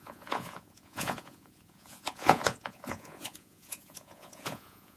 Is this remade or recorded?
remade